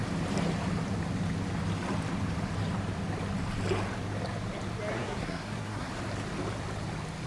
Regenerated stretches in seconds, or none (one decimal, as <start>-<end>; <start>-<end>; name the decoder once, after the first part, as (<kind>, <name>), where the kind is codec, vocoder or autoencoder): 4.9-5.9 (codec, SNAC)

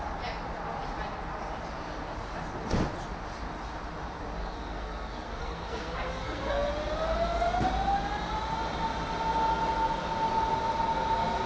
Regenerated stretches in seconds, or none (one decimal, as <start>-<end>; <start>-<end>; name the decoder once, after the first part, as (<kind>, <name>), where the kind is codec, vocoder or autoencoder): 4.4-6.7 (codec, SNAC)

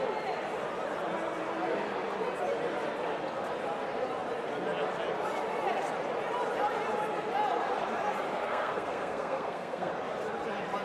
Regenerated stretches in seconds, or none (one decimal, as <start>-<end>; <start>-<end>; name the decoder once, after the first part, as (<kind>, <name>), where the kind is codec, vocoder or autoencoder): 8.3-9.9 (codec, SNAC)

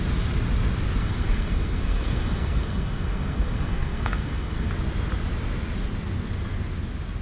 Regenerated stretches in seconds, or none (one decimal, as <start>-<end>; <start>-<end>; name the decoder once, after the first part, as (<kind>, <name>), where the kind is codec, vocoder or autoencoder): 1.0-4.7 (codec, SNAC)